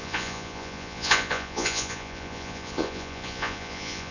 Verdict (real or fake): fake